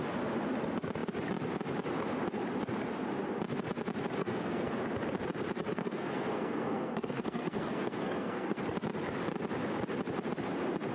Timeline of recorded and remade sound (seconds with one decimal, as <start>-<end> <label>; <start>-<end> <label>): 0.0-4.2 recorded; 4.2-4.7 remade; 4.7-5.7 recorded; 5.7-8.6 remade; 8.6-10.9 recorded